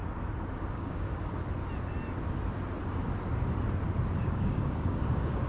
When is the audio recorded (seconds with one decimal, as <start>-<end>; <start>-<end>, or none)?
0.0-0.7; 1.2-4.2